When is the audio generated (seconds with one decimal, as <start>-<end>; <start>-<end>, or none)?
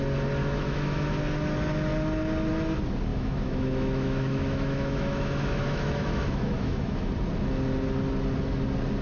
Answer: 0.4-1.1; 3.1-7.1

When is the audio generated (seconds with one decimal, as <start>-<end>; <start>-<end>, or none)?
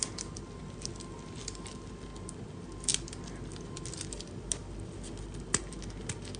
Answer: none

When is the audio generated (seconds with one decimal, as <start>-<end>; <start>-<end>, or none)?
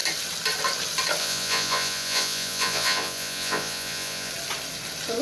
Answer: 1.2-4.3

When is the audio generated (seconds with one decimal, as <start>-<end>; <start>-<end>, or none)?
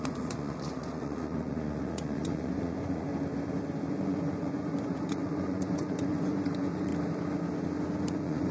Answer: 0.0-3.1; 3.9-6.9; 8.1-8.5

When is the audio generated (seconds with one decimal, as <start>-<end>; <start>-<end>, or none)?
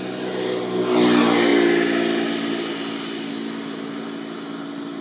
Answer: none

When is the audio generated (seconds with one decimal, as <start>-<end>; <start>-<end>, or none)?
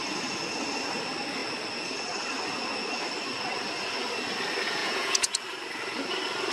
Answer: 4.8-5.4